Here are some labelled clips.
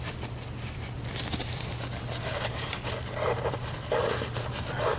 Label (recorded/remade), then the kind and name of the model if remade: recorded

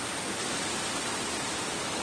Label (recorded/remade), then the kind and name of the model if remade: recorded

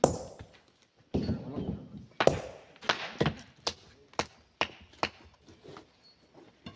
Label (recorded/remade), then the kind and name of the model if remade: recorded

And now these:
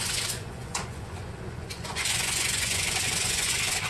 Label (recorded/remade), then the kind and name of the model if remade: remade, vocoder, Vocos